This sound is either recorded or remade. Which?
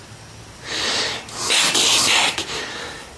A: recorded